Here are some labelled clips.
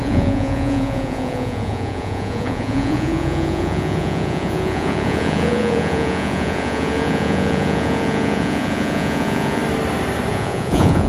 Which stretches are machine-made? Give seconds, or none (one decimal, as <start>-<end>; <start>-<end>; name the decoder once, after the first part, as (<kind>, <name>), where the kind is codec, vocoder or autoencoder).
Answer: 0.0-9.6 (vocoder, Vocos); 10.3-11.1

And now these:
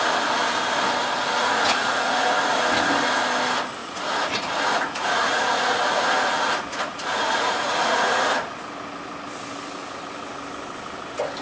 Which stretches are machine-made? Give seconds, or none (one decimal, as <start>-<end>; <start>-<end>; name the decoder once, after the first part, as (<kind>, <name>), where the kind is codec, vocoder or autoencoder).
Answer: 1.4-2.6 (vocoder, Vocos); 3.8-8.6

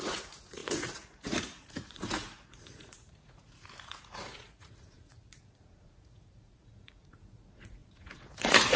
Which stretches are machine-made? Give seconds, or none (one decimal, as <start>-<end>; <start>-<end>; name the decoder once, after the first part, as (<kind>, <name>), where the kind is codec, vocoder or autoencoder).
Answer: 0.0-8.8 (vocoder, Vocos)

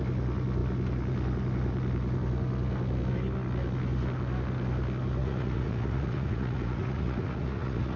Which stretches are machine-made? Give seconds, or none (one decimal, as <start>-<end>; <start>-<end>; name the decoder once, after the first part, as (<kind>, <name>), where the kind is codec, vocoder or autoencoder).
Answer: 5.2-8.0 (vocoder, Vocos)